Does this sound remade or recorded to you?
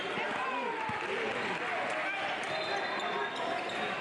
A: recorded